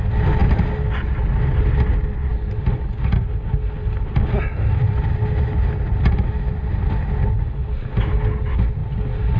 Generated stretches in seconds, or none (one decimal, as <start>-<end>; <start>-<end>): none